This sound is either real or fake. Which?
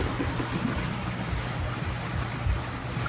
real